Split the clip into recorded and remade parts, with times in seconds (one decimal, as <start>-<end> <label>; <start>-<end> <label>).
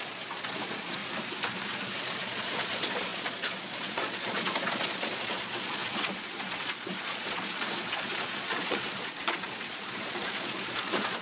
0.0-1.0 remade; 1.0-2.0 recorded; 2.0-11.2 remade